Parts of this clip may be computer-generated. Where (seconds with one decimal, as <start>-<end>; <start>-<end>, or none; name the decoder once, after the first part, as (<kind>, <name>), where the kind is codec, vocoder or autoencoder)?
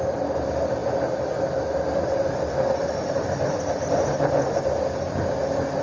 none